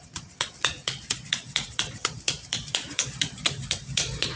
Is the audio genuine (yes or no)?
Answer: no